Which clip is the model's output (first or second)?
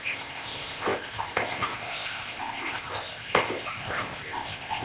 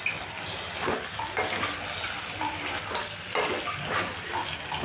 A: first